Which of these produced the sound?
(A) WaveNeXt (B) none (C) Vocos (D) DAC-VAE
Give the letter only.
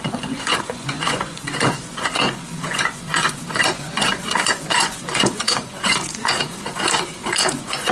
C